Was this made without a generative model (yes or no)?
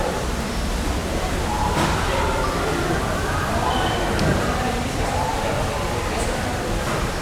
no